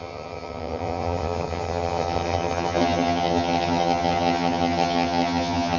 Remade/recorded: remade